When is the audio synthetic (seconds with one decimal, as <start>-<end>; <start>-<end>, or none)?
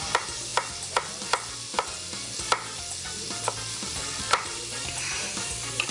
0.0-0.5; 4.0-5.9